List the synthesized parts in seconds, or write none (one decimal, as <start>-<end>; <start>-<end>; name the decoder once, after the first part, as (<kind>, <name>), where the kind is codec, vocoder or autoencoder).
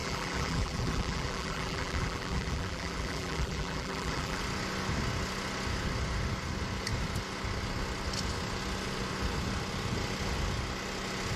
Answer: 0.0-4.4 (vocoder, BigVGAN v2)